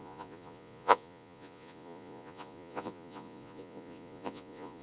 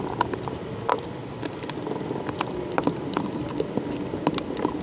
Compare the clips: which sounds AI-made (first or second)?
first